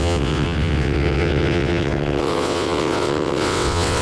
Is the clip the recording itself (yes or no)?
no